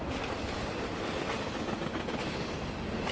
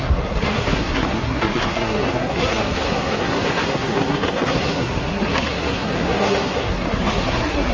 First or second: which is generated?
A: second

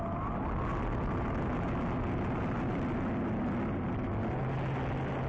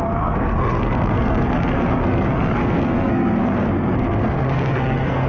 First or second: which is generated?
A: second